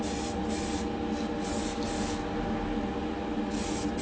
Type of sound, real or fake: real